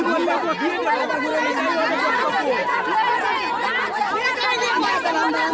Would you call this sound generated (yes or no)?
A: no